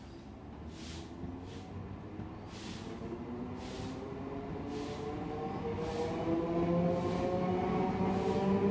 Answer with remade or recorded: recorded